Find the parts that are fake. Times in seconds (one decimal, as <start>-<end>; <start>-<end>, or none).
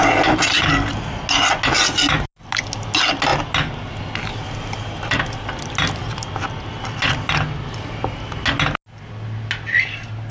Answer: none